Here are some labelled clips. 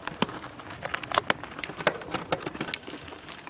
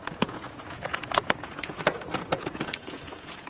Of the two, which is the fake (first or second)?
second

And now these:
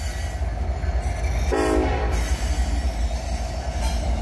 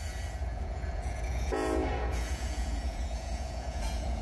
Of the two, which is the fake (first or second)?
second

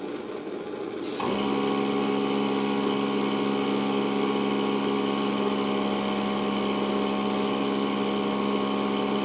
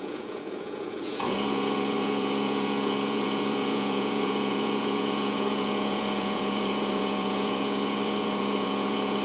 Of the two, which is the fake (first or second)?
second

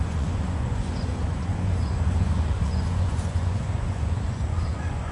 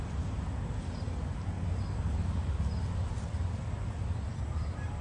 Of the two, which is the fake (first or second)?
first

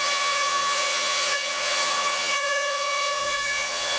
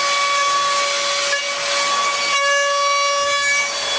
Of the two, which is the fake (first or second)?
first